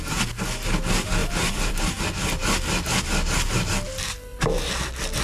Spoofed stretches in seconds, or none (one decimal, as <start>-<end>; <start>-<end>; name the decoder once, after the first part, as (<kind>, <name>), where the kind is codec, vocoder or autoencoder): 1.2-2.0 (vocoder, BigVGAN v2)